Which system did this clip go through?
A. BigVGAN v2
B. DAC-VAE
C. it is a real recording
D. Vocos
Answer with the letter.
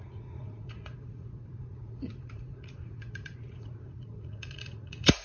D